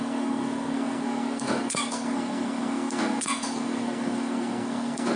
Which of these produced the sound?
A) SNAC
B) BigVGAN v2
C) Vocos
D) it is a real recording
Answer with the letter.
A